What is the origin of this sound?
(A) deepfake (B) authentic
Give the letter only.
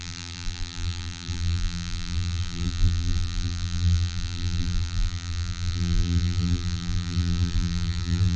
A